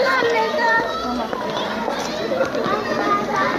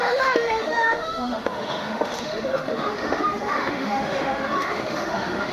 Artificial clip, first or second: second